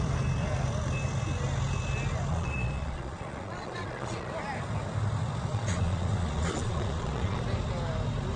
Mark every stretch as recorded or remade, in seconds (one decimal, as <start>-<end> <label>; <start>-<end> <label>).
0.0-2.3 recorded; 2.3-4.3 remade; 4.3-5.5 recorded; 5.5-7.4 remade; 7.4-8.4 recorded